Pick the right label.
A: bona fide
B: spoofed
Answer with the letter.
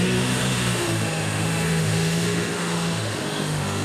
B